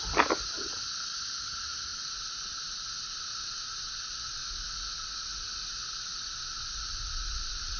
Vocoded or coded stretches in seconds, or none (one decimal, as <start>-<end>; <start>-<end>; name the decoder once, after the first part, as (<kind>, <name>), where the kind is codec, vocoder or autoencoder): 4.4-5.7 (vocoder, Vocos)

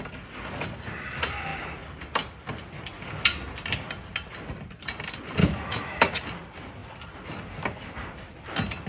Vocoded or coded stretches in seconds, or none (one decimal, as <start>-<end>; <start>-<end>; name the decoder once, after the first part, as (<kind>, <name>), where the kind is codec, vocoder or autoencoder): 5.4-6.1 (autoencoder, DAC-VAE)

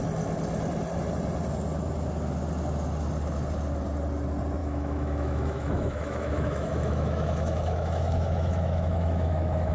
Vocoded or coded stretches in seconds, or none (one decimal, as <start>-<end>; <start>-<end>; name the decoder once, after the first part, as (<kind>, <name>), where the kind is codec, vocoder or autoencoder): 4.6-9.7 (autoencoder, DAC-VAE)